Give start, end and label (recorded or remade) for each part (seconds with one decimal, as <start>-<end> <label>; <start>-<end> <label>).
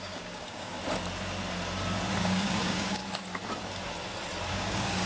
0.0-0.8 remade; 0.8-2.2 recorded; 2.2-3.0 remade; 3.0-4.5 recorded; 4.5-5.1 remade